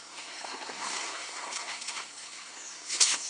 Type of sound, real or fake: fake